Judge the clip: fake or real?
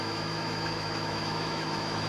fake